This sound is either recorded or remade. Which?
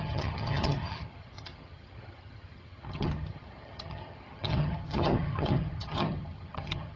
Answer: remade